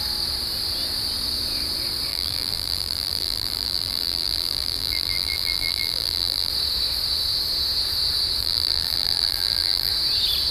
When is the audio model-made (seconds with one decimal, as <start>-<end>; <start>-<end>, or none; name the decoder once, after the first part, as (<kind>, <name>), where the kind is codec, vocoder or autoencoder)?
2.1-6.5 (vocoder, BigVGAN v2); 8.4-9.9